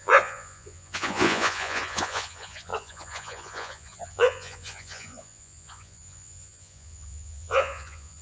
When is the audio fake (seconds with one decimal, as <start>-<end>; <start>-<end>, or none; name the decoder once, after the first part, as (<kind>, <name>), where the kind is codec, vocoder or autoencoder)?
0.0-8.2 (vocoder, Vocos)